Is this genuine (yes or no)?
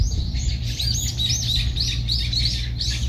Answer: yes